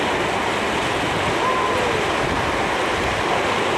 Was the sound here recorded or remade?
recorded